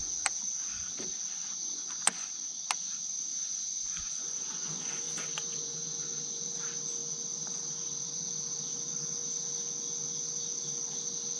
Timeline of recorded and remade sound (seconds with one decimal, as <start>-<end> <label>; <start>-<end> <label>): 0.0-1.4 recorded; 1.4-2.6 remade; 2.6-3.3 recorded; 3.3-6.4 remade; 6.4-11.4 recorded